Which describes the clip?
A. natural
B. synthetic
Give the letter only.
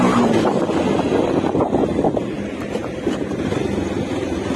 A